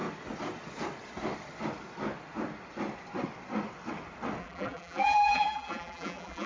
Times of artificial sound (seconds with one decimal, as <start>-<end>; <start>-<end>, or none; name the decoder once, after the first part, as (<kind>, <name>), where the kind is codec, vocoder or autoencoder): 4.4-6.5 (vocoder, BigVGAN v2)